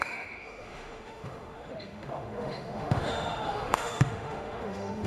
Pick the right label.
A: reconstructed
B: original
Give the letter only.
A